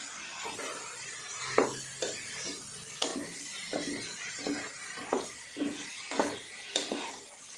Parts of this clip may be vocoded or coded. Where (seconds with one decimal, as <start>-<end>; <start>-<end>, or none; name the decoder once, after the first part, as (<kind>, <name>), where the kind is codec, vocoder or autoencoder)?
none